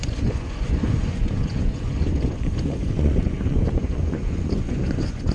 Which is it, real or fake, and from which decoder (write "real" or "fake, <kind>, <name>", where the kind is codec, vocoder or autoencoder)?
fake, vocoder, Vocos